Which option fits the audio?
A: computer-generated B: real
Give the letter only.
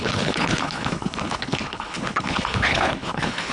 A